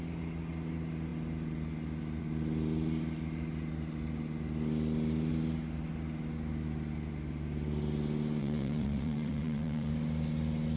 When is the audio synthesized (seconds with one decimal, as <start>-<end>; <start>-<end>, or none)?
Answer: 8.4-9.9